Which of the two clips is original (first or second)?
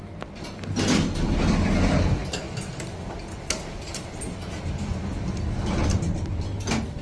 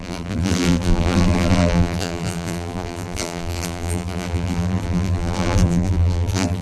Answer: first